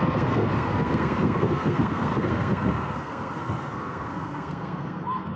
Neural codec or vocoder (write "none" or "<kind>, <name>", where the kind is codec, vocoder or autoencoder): codec, SNAC